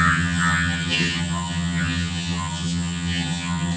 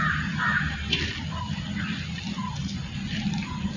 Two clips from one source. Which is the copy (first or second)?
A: first